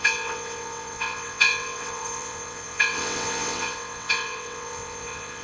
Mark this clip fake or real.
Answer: fake